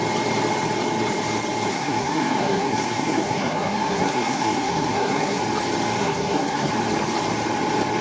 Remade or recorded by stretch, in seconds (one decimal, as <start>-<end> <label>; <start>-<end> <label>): 0.0-1.7 recorded; 1.7-5.4 remade; 5.4-6.0 recorded; 6.0-6.7 remade; 6.7-8.0 recorded